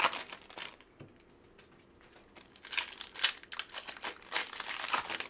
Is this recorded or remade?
recorded